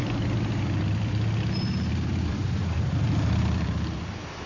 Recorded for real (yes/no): no